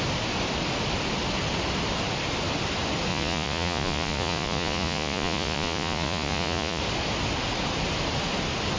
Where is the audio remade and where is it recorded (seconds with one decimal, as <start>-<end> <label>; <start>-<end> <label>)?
0.0-3.1 recorded; 3.1-6.8 remade; 6.8-8.8 recorded